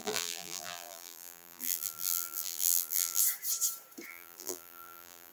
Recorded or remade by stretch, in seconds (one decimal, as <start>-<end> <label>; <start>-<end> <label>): 0.0-3.2 remade; 3.2-4.1 recorded; 4.1-5.3 remade